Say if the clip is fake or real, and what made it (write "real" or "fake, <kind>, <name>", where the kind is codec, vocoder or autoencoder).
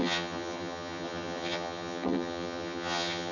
fake, vocoder, HiFi-GAN